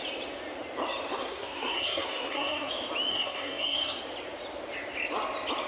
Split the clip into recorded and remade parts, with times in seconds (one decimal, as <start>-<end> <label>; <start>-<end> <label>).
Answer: 0.0-1.2 recorded; 1.2-2.7 remade; 2.7-3.1 recorded; 3.1-4.0 remade; 4.0-5.7 recorded